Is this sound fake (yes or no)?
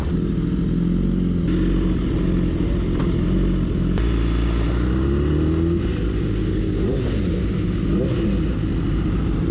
no